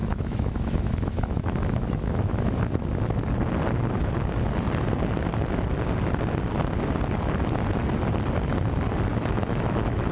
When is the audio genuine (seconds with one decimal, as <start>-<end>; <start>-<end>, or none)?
2.6-9.1